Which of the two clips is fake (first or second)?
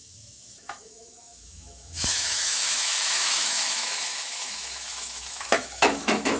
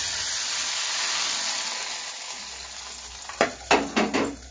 first